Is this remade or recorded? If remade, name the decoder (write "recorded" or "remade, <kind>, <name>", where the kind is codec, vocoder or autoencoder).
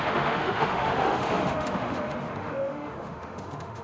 remade, autoencoder, DAC-VAE